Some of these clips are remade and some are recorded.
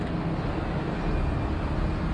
recorded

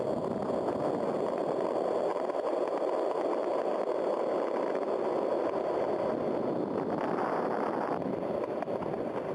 recorded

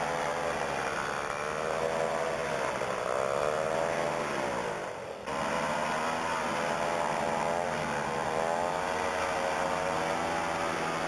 recorded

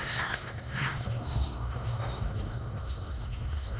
remade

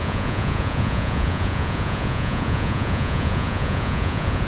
remade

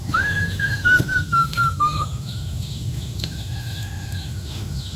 remade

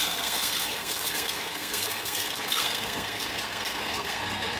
remade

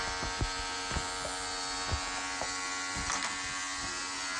recorded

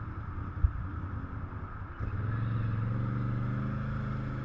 recorded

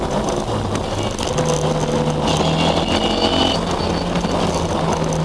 recorded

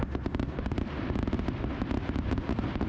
recorded